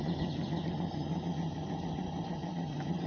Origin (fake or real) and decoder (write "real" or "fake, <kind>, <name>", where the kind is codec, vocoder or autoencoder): real